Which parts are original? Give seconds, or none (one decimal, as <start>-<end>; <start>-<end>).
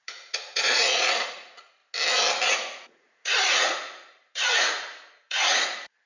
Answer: 1.8-2.5